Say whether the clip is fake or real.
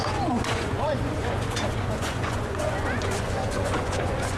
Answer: fake